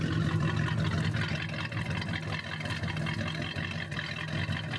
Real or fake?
real